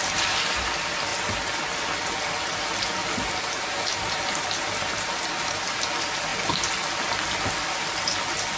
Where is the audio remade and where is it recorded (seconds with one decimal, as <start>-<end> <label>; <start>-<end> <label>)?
0.0-3.0 recorded; 3.0-5.5 remade; 5.5-8.6 recorded